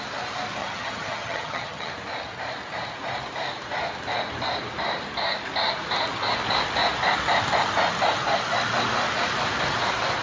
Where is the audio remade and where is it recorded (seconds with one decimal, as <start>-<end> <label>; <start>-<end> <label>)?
0.0-0.6 recorded; 0.6-1.9 remade; 1.9-10.2 recorded